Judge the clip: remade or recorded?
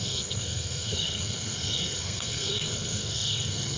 remade